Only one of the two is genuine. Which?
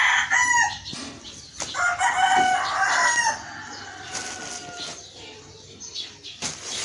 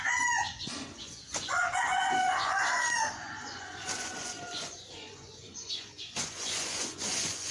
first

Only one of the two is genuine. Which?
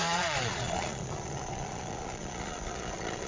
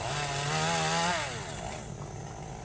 second